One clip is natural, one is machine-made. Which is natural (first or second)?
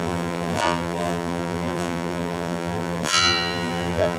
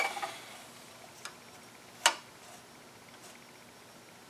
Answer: second